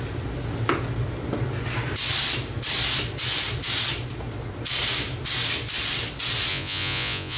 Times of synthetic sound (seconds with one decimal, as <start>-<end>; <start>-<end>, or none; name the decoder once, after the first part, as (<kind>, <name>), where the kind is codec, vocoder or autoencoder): 6.5-7.4 (vocoder, Vocos)